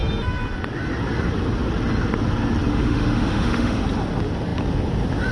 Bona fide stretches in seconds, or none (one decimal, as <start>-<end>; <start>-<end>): 0.0-2.7; 3.8-5.3